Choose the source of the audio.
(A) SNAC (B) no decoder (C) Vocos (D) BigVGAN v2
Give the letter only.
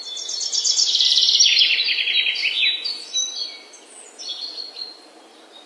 B